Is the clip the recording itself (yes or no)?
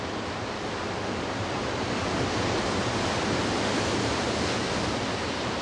yes